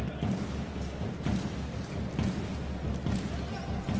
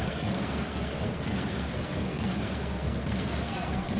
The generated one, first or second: second